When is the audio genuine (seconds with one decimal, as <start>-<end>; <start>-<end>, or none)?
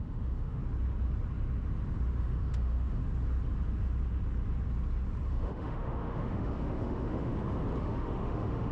0.6-2.2; 3.0-5.3; 7.3-7.8